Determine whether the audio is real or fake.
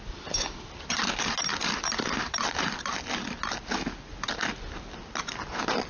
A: real